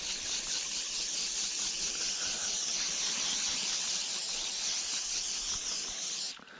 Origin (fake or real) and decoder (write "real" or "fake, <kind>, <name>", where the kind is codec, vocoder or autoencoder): real